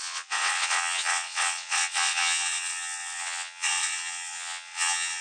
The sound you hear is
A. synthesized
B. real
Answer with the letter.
A